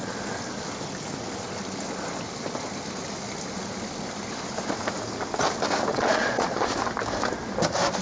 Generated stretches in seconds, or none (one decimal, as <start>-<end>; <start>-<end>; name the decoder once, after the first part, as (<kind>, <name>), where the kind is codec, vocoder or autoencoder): 5.9-6.7 (vocoder, Vocos)